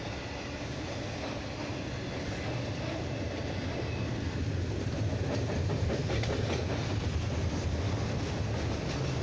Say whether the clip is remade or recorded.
recorded